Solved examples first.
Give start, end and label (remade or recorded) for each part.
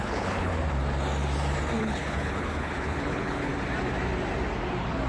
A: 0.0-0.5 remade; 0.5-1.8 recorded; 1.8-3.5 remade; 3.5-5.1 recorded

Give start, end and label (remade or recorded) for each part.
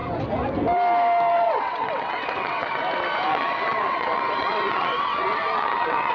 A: 0.0-1.3 recorded; 1.3-2.8 remade; 2.8-3.3 recorded; 3.3-6.1 remade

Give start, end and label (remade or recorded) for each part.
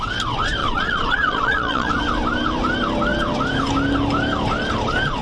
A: 0.0-0.6 recorded; 0.6-1.9 remade; 1.9-5.2 recorded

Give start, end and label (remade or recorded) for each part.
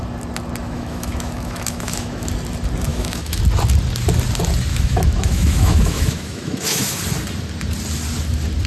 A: 0.0-0.6 recorded; 0.6-2.3 remade; 2.3-2.9 recorded; 2.9-3.4 remade; 3.4-4.7 recorded; 4.7-7.0 remade; 7.0-8.7 recorded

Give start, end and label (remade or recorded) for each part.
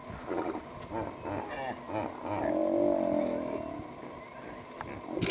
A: 0.0-1.5 remade; 1.5-5.3 recorded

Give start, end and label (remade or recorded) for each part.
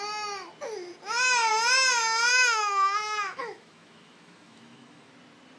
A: 0.0-2.3 recorded; 2.3-5.1 remade; 5.1-5.6 recorded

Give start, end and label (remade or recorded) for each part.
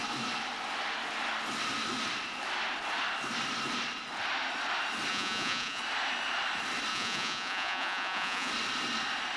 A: 0.0-5.1 recorded; 5.1-5.8 remade; 5.8-6.9 recorded; 6.9-8.5 remade; 8.5-9.4 recorded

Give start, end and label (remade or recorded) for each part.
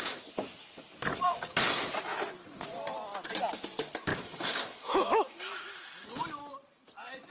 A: 0.0-4.1 recorded; 4.1-6.5 remade; 6.5-7.3 recorded